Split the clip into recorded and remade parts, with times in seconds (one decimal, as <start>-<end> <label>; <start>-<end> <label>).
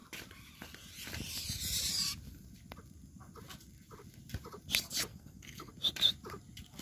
0.0-5.1 recorded; 5.1-5.7 remade; 5.7-6.8 recorded